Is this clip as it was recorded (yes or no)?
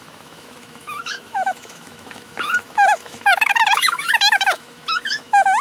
no